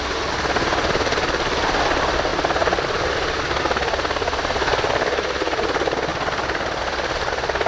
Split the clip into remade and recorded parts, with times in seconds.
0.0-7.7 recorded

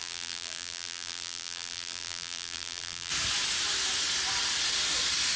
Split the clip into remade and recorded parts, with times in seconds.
0.0-3.1 remade; 3.1-5.4 recorded

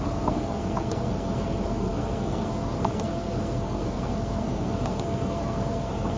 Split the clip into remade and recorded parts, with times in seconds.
0.0-6.2 remade

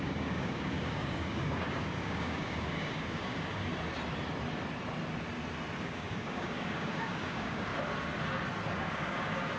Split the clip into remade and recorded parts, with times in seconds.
0.0-3.7 remade; 3.7-5.8 recorded; 5.8-7.7 remade; 7.7-8.7 recorded; 8.7-9.6 remade

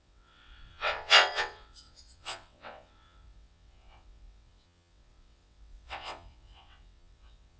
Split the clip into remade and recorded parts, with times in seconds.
0.0-7.6 remade

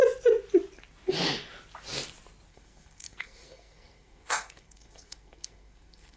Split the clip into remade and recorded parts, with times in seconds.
0.0-2.5 recorded; 2.5-6.2 remade

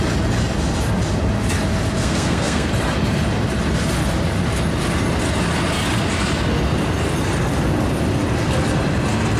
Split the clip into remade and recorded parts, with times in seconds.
0.0-2.0 recorded; 2.0-2.7 remade; 2.7-9.4 recorded